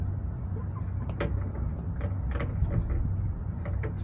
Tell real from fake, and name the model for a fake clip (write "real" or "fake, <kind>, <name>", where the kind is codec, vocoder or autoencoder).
real